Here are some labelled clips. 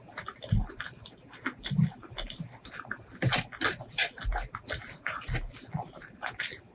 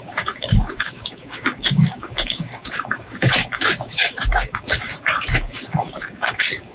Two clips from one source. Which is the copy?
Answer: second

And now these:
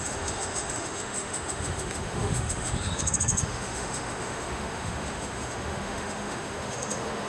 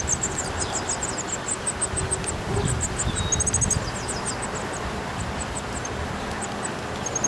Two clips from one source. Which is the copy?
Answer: first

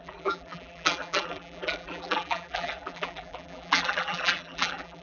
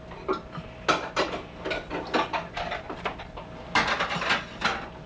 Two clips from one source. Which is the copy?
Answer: first